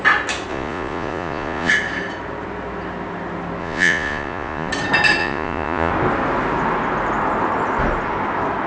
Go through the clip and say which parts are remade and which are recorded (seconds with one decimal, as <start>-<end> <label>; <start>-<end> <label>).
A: 0.0-0.5 recorded; 0.5-1.7 remade; 1.7-3.6 recorded; 3.6-4.7 remade; 4.7-5.2 recorded; 5.2-5.9 remade; 5.9-8.7 recorded